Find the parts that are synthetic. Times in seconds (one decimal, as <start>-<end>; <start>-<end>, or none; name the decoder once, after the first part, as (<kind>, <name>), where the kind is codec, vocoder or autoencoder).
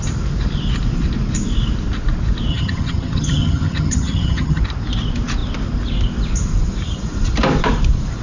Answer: 2.5-4.6 (vocoder, HiFi-GAN)